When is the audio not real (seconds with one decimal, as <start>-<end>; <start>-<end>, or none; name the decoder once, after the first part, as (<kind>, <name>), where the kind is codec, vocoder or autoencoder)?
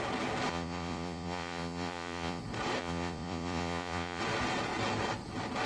0.5-2.4 (vocoder, Vocos); 2.8-4.2